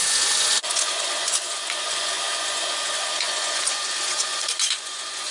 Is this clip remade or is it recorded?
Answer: remade